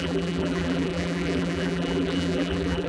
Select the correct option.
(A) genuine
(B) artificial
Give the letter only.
B